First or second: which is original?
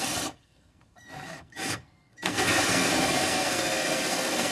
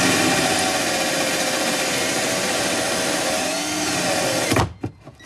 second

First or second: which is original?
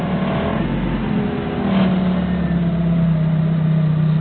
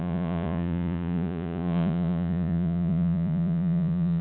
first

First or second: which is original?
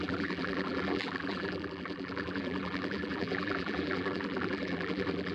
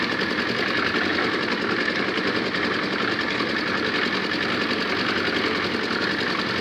second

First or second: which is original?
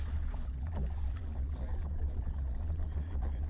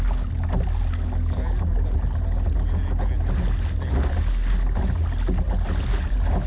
second